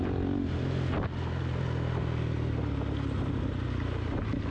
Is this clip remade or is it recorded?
recorded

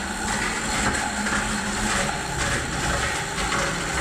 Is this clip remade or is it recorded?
recorded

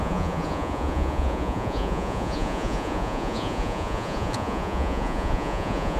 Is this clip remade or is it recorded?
remade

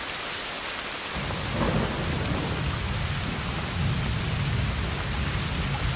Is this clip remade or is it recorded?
recorded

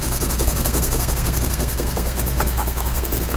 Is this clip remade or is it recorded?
remade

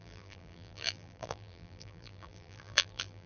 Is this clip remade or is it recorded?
remade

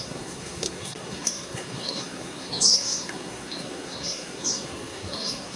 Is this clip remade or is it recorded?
remade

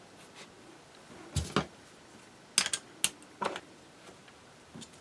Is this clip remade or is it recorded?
recorded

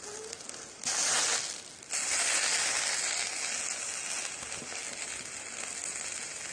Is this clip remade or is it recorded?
recorded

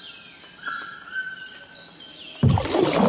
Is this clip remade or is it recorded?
recorded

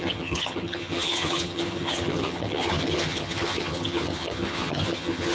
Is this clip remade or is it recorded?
remade